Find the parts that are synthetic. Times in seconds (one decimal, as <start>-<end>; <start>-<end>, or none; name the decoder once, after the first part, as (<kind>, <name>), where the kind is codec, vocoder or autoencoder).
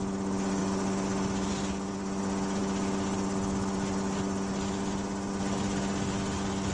none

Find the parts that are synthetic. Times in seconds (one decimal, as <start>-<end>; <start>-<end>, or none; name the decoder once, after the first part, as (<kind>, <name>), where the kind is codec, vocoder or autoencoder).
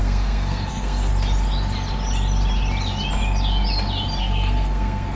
0.0-1.1 (codec, SNAC); 4.2-5.2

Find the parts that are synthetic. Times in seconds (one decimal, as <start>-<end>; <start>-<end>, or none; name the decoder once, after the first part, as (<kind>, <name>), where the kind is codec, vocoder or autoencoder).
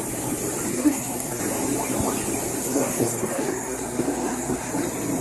0.7-1.4 (codec, SNAC); 2.6-4.7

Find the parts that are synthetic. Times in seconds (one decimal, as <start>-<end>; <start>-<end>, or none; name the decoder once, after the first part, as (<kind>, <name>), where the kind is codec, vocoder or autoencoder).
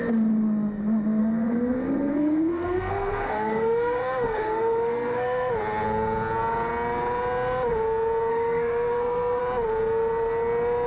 1.2-5.5 (codec, SNAC); 8.3-9.4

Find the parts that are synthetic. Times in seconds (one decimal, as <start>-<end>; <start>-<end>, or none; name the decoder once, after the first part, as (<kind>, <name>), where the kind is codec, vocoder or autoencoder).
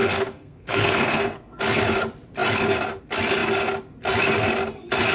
0.0-1.6 (codec, SNAC)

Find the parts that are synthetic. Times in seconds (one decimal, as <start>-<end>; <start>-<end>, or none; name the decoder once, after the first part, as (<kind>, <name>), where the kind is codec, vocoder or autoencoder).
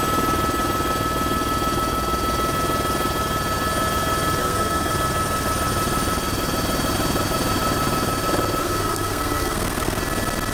4.4-4.9 (codec, SNAC); 8.6-10.0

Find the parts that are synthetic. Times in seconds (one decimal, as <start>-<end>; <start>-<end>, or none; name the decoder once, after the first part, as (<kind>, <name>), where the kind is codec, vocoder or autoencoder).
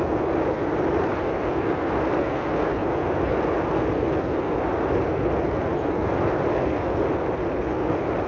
none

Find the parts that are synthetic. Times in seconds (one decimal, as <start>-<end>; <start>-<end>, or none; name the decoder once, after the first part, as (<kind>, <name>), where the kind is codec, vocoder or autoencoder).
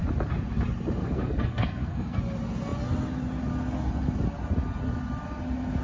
1.0-2.2 (codec, SNAC)